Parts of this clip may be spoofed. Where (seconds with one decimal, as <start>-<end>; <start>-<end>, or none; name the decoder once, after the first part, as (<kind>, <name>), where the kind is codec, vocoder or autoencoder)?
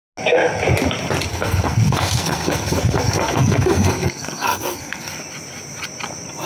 1.3-5.2 (codec, SNAC)